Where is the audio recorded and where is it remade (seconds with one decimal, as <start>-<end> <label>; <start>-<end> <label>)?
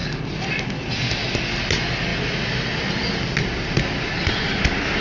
0.0-5.0 recorded